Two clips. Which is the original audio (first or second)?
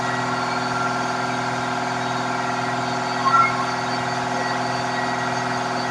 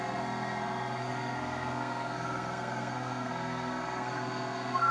first